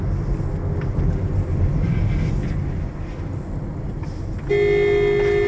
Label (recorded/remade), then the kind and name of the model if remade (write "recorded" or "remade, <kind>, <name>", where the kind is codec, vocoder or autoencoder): recorded